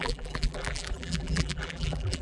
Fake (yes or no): yes